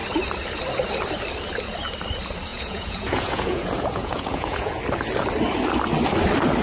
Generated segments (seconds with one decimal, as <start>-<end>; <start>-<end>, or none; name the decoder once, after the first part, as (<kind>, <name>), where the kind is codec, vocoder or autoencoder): 2.5-4.8 (vocoder, Vocos)